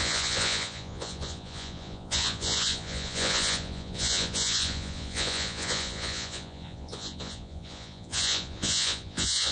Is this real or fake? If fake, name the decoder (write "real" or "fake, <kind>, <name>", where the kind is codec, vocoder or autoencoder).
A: fake, vocoder, Vocos